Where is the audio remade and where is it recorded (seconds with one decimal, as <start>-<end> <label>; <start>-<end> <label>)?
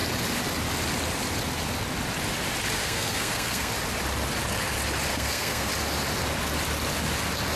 0.0-2.8 recorded; 2.8-3.7 remade; 3.7-5.1 recorded; 5.1-5.7 remade; 5.7-7.6 recorded